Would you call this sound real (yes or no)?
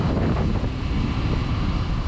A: yes